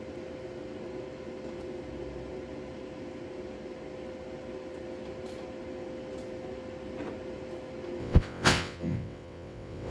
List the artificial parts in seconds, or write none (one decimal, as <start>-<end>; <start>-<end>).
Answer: 8.0-9.9